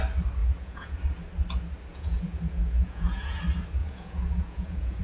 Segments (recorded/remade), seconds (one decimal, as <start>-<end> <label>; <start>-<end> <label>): 0.0-0.4 recorded; 0.4-1.0 remade; 1.0-1.9 recorded; 1.9-3.4 remade; 3.4-3.8 recorded; 3.8-5.0 remade